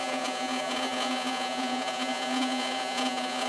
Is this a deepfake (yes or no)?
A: yes